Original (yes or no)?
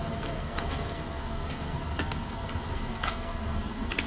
no